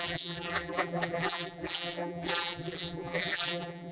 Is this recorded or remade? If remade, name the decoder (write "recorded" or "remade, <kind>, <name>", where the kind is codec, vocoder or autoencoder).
remade, vocoder, BigVGAN v2